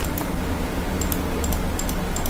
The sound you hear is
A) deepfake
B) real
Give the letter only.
B